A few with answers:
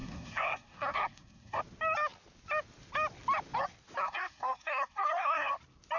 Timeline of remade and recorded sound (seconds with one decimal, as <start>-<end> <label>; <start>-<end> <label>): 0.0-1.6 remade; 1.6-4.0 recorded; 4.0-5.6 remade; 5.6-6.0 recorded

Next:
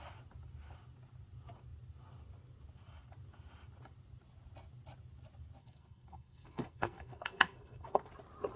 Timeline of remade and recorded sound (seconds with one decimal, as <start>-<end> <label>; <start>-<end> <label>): 0.0-5.6 recorded; 5.6-8.1 remade; 8.1-8.6 recorded

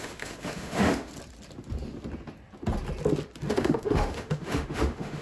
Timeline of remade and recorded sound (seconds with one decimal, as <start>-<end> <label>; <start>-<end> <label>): 0.0-1.1 remade; 1.1-3.5 recorded; 3.5-5.2 remade